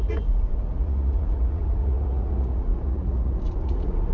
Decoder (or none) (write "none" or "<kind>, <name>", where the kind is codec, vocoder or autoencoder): vocoder, Vocos